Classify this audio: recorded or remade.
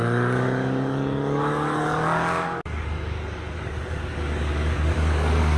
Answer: remade